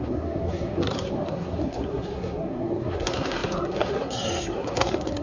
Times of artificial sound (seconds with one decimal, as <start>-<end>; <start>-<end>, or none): 0.0-5.2